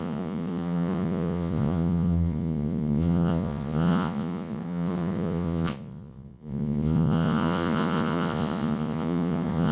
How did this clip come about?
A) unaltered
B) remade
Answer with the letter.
B